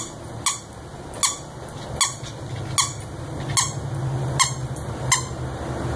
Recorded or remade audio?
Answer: recorded